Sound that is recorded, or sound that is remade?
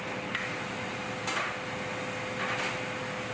recorded